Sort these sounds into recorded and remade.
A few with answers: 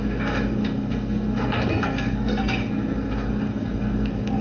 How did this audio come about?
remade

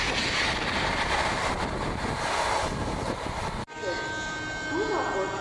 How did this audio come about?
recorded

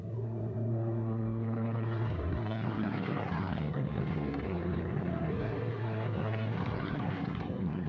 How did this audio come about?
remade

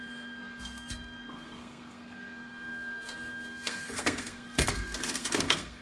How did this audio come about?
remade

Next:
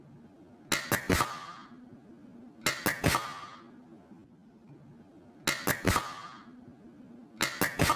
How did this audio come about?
recorded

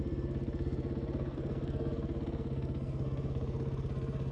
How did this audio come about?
remade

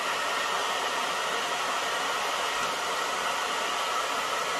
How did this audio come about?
recorded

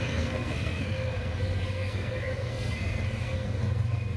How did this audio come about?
remade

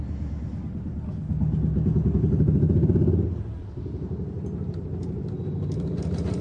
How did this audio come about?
recorded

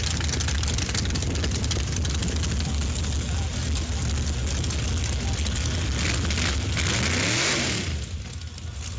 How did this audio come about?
recorded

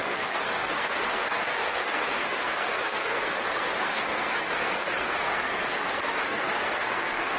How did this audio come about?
remade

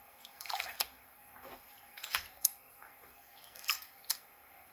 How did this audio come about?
remade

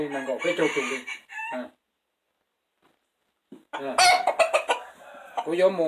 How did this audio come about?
recorded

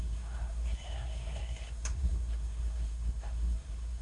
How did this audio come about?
remade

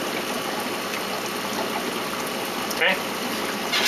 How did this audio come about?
recorded